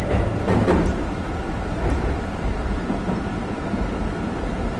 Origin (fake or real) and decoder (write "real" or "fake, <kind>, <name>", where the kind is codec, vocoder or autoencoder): fake, vocoder, BigVGAN v2